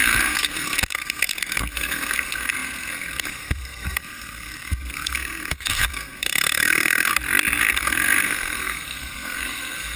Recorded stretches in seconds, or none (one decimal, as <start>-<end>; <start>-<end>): 7.1-7.6